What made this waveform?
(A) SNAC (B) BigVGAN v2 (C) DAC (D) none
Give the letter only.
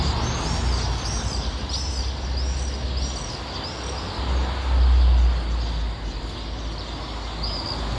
D